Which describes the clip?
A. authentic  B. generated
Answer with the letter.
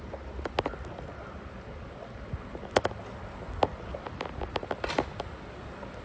A